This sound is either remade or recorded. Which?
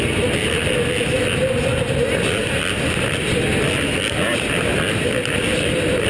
recorded